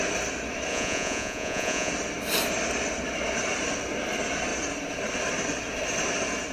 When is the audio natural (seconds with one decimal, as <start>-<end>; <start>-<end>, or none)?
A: 0.0-0.7; 1.9-6.5